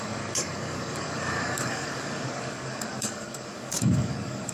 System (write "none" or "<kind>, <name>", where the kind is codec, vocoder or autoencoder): codec, DAC